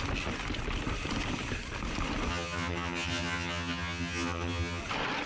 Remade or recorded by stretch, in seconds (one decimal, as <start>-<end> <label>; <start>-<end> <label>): 0.0-2.3 recorded; 2.3-4.8 remade; 4.8-5.3 recorded